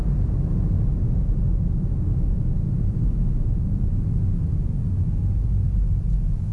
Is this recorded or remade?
recorded